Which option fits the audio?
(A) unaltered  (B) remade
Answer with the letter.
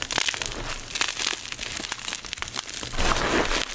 A